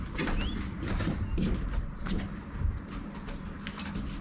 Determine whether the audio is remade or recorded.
remade